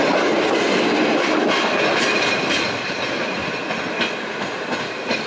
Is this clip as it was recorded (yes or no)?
yes